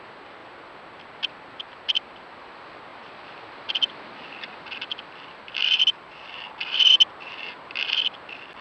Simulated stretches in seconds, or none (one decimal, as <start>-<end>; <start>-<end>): none

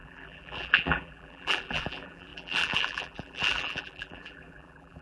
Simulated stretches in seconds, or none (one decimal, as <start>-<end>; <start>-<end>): 0.0-5.0

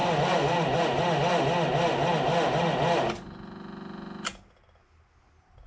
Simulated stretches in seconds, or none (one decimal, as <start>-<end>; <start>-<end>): 0.0-0.8

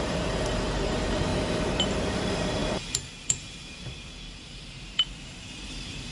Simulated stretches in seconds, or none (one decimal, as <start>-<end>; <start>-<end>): 0.0-1.3; 2.1-6.1

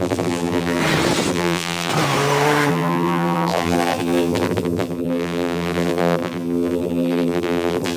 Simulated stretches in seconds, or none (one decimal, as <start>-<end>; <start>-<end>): 0.0-0.8; 1.3-1.9; 2.7-8.0